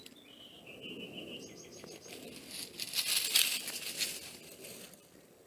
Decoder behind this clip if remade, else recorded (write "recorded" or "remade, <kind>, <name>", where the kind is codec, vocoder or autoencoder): recorded